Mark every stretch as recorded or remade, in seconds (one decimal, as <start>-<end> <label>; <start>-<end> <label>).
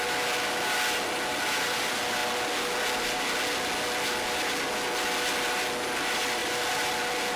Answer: 0.0-7.4 recorded